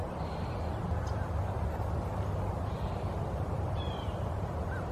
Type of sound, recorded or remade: recorded